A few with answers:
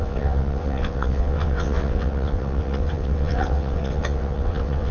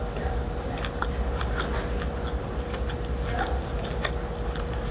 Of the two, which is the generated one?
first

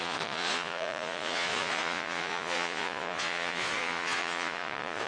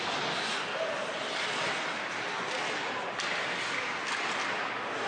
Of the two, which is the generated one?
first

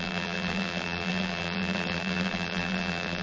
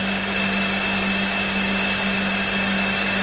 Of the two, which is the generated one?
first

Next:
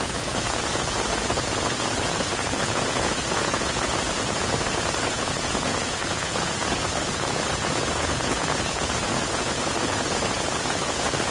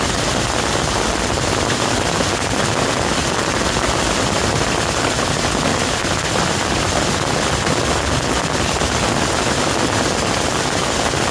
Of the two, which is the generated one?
first